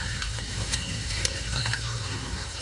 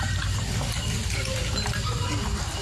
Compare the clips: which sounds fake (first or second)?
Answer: first